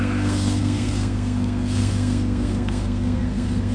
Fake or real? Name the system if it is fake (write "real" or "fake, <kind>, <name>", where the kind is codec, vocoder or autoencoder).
fake, codec, SNAC